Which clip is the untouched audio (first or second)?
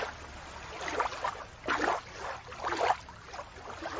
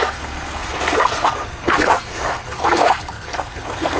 first